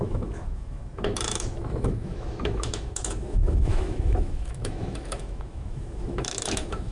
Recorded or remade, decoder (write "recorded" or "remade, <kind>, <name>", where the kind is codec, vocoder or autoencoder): remade, autoencoder, DAC-VAE